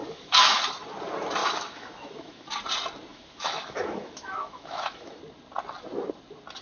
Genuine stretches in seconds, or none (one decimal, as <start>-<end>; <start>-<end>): 0.6-1.4; 2.5-3.1; 5.2-6.6